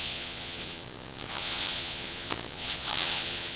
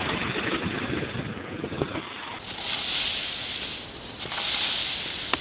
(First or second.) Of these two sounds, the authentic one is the second